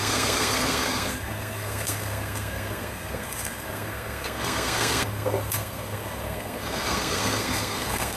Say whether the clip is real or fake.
fake